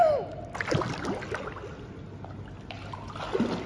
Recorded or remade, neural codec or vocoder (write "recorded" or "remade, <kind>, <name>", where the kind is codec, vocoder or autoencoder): recorded